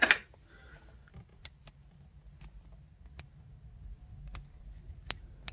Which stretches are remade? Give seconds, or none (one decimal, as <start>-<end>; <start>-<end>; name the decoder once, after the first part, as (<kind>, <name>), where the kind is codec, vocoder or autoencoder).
none

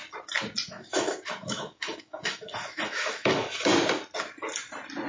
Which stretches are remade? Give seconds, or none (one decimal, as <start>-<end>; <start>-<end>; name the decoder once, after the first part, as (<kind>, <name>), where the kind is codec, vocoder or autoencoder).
0.7-3.7 (autoencoder, DAC-VAE)

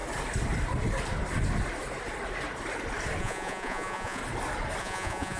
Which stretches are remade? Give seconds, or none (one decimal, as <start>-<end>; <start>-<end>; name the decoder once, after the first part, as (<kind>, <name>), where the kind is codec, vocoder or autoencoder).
3.2-4.2 (vocoder, Vocos); 4.8-5.4

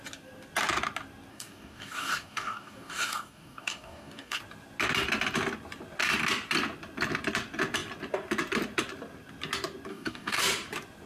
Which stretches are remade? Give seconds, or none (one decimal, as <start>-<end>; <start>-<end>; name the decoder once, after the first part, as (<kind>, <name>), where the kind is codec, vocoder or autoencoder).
1.3-4.4 (codec, DAC); 9.9-10.4

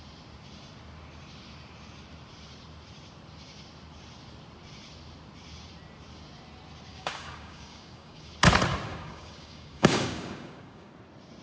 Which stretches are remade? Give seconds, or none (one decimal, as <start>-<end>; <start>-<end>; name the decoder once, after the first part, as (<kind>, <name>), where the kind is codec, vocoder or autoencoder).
6.9-8.3 (codec, DAC); 8.9-10.9

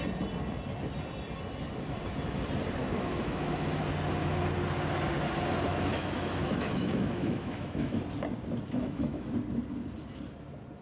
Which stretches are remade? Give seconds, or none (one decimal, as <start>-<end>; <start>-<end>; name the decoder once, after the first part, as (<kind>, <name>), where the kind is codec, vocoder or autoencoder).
2.8-3.8 (autoencoder, DAC-VAE); 5.7-8.0; 8.8-9.3

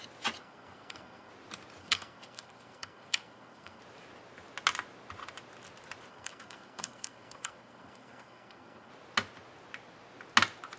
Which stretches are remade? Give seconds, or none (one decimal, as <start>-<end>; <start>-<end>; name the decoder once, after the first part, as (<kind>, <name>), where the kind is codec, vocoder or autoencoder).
0.4-1.3 (codec, SNAC); 1.8-3.8; 6.1-8.9